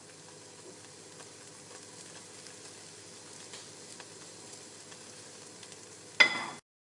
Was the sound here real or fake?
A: real